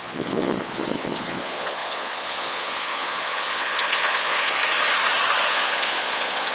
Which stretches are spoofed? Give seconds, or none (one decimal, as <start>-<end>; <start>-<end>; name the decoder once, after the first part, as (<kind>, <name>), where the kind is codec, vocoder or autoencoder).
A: 0.0-4.6 (vocoder, Vocos); 5.5-6.5